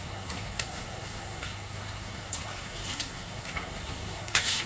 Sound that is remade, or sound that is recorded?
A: remade